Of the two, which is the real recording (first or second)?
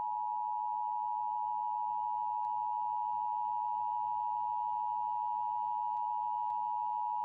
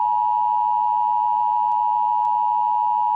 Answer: second